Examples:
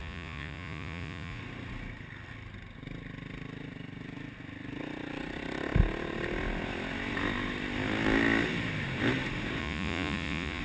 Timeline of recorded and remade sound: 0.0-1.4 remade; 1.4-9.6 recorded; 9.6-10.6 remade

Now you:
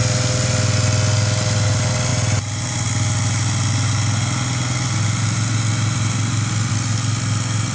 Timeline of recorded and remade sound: 0.0-7.7 recorded